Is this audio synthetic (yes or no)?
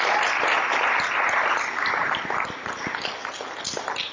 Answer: no